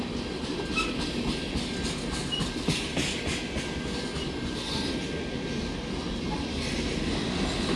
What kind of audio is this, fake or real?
real